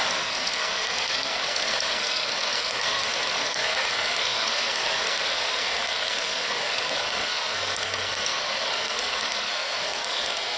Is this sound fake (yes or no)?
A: yes